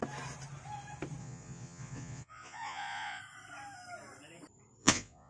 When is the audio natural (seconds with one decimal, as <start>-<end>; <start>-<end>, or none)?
0.0-1.2; 3.2-4.8